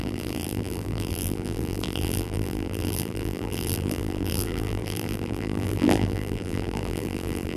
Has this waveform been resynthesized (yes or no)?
yes